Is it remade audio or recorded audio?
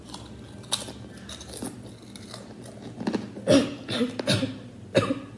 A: recorded